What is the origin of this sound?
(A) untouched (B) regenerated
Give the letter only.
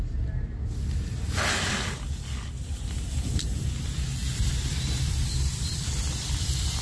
A